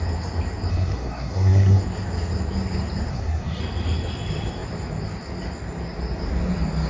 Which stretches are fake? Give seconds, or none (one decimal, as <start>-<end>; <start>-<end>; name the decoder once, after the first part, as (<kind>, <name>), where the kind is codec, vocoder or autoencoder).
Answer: 0.7-1.8 (codec, SNAC); 3.1-3.6